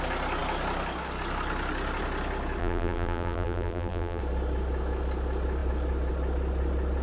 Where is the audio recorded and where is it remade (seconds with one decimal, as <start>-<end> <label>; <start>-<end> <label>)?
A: 0.0-2.6 recorded; 2.6-4.2 remade; 4.2-7.0 recorded